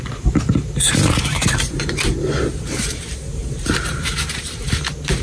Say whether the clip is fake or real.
fake